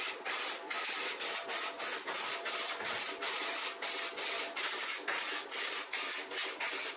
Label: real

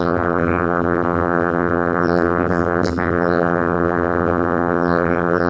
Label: fake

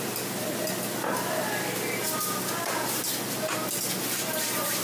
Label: real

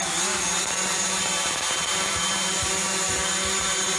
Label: fake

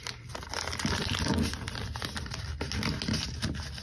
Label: real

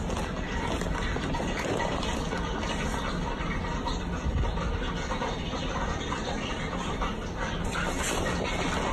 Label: real